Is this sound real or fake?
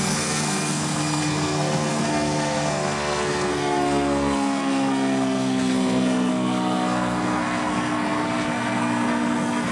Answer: fake